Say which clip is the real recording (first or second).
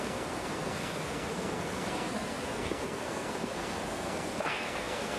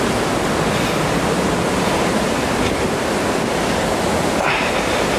second